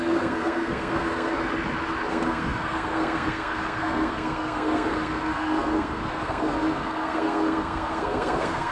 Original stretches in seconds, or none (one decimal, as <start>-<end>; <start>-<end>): 1.3-2.1